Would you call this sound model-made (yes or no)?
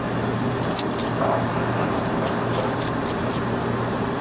yes